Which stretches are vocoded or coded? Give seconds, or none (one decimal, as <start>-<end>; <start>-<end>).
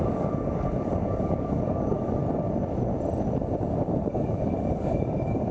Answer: 0.0-2.2; 3.7-5.5